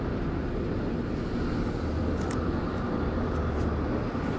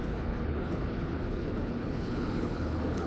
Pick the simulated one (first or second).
second